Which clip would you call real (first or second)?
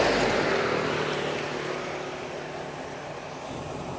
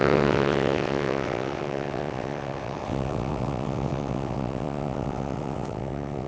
first